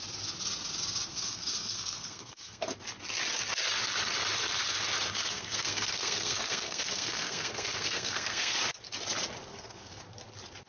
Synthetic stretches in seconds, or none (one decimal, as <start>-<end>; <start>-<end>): 1.1-2.6; 5.2-8.6; 9.5-10.0